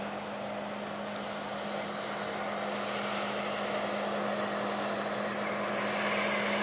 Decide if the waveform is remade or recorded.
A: recorded